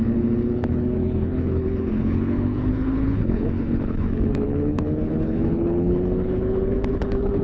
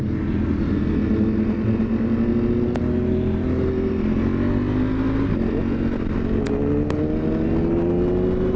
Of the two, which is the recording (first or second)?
second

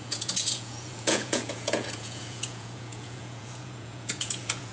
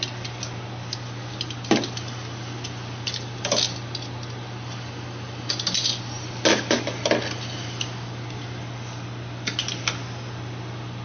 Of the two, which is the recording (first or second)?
second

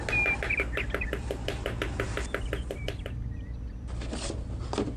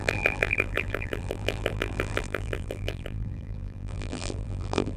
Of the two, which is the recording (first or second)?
first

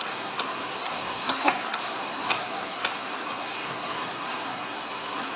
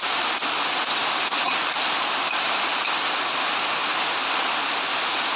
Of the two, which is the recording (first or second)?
second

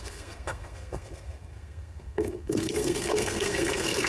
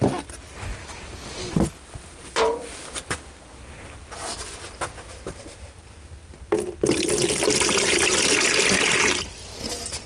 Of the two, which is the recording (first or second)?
second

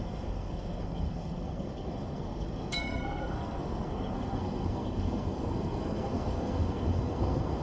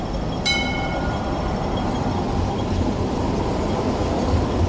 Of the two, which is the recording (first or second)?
second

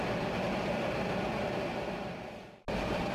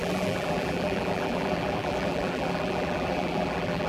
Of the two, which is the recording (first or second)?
first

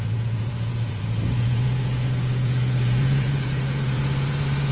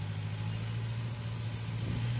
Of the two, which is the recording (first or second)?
second